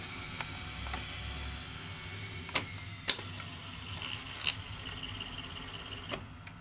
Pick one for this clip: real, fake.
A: real